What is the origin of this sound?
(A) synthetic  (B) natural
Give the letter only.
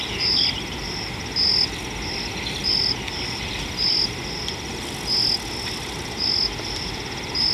B